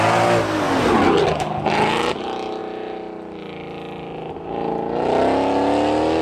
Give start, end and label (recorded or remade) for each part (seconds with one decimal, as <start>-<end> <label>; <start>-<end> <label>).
0.0-6.2 recorded